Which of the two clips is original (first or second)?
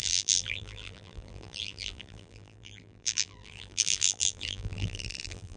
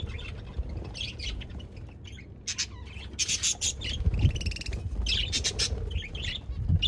second